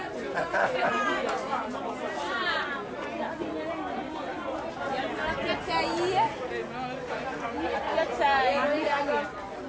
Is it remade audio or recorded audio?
recorded